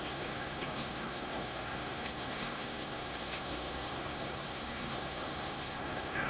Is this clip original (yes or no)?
no